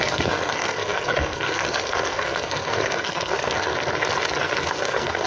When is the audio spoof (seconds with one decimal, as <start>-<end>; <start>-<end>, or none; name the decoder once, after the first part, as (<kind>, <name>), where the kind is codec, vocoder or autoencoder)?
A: 0.0-3.7 (codec, SNAC); 4.4-5.3